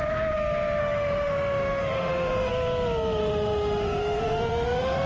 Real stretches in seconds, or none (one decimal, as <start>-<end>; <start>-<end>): 0.0-0.8; 2.5-3.2